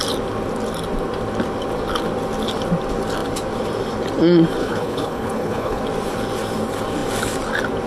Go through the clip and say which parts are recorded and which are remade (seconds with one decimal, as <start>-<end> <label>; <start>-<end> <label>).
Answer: 0.0-4.6 recorded; 4.6-5.8 remade; 5.8-7.9 recorded